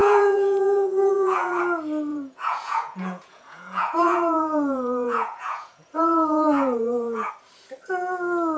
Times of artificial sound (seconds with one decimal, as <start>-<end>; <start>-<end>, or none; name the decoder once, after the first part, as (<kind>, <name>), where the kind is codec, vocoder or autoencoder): 0.0-1.6 (vocoder, Vocos); 2.1-7.3